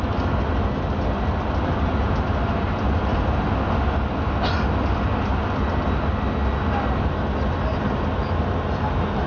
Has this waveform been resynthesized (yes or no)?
no